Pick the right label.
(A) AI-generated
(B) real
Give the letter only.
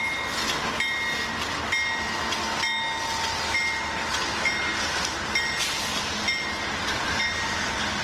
B